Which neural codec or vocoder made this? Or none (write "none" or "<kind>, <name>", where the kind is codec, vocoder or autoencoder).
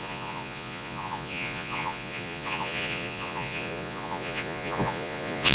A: vocoder, Vocos